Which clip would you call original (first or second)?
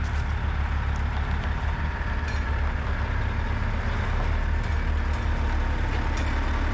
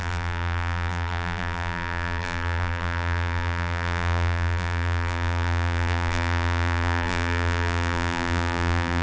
first